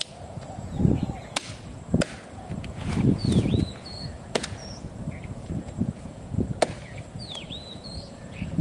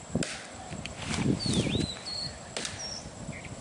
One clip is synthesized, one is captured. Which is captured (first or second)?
second